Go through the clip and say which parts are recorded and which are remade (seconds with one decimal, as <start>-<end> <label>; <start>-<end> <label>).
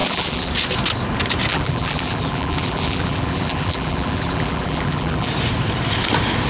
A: 0.0-0.5 remade; 0.5-1.5 recorded; 1.5-5.3 remade; 5.3-6.5 recorded